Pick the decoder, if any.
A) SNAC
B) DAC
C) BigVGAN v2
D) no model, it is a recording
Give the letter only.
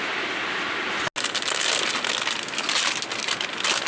D